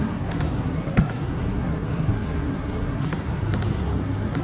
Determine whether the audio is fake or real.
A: fake